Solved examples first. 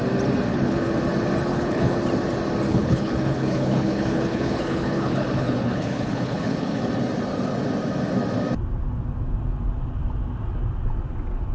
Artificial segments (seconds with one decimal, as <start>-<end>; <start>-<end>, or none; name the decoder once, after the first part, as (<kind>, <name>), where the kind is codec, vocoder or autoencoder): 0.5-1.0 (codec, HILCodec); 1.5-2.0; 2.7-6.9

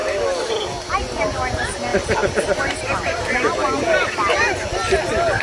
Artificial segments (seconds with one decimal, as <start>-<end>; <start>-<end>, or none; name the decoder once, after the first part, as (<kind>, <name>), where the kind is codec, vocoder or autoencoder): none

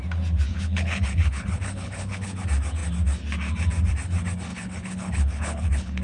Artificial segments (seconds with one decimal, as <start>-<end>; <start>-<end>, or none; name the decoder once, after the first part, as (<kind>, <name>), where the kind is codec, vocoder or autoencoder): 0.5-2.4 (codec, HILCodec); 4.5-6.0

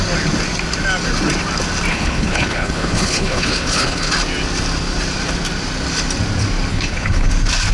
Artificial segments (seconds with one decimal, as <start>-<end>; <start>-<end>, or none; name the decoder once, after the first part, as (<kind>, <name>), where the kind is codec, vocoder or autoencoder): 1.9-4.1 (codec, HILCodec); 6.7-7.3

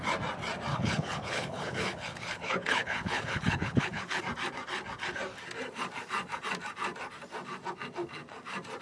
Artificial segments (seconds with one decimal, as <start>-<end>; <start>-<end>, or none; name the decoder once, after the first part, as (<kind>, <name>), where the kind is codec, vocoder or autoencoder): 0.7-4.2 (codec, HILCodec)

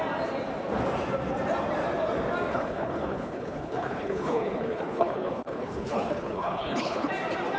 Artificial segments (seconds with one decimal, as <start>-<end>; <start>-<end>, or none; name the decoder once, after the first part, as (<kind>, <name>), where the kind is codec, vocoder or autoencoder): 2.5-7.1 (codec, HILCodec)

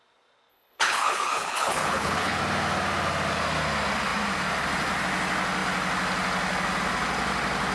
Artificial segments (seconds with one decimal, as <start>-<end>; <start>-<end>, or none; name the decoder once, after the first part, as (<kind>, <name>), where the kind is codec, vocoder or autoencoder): 0.5-2.4 (codec, HILCodec)